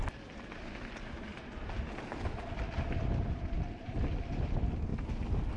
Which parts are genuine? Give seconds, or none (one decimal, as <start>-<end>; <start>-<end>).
1.3-2.8; 4.9-5.6